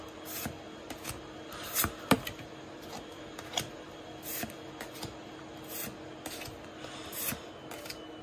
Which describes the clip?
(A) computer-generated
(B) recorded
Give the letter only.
B